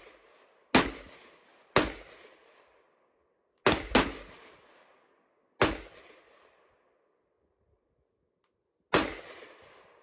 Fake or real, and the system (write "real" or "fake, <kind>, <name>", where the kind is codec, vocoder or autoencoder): real